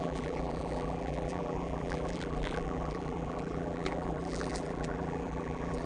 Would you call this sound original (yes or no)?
no